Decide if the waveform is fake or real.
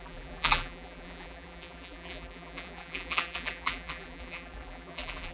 fake